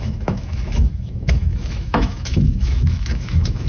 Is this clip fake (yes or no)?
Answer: yes